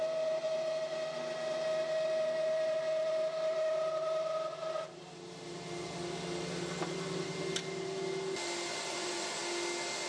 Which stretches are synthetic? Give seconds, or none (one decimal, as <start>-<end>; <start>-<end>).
8.7-9.4